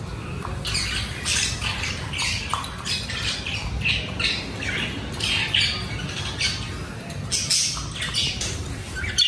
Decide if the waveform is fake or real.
real